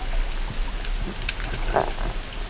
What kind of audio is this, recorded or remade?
recorded